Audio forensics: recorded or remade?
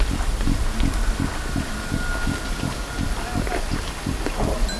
recorded